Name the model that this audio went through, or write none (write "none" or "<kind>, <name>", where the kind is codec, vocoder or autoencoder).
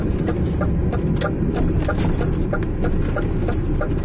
none